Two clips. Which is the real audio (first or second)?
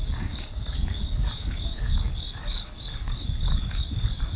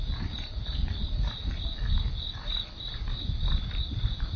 second